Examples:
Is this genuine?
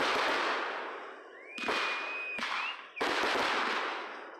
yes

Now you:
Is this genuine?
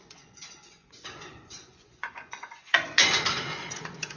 no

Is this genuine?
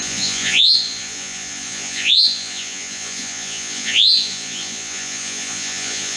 no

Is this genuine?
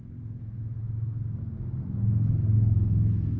yes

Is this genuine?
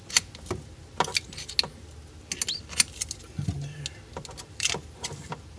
yes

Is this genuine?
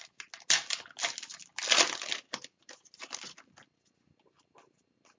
yes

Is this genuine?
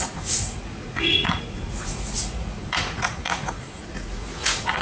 no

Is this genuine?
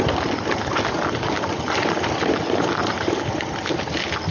yes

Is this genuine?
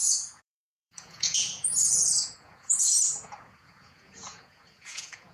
no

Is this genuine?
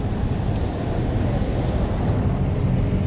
yes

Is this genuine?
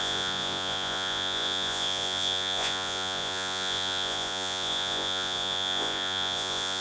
no